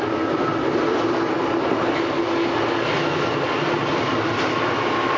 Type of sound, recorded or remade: recorded